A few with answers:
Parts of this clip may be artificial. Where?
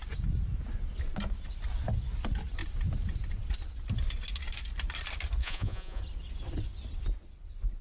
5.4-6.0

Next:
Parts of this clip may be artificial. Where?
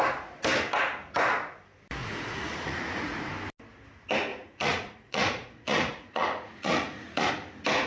2.0-3.3; 4.3-7.3